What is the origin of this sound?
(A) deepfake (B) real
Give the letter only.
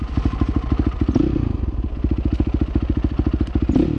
B